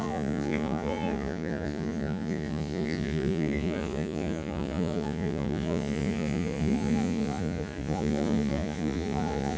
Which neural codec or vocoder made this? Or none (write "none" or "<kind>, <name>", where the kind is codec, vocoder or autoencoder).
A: vocoder, Vocos